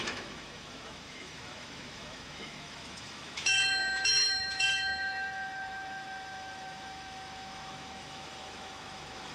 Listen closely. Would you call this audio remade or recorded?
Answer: remade